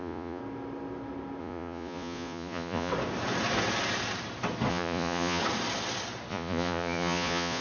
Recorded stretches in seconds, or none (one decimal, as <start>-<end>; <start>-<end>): 0.4-1.4; 2.9-4.7; 5.4-6.3